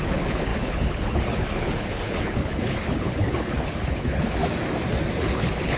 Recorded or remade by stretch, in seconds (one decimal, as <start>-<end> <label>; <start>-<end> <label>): 0.0-4.4 remade; 4.4-5.2 recorded; 5.2-5.8 remade

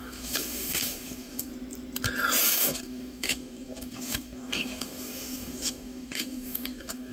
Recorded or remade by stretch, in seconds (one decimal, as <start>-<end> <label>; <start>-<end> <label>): 0.0-1.5 remade; 1.5-2.5 recorded; 2.5-7.1 remade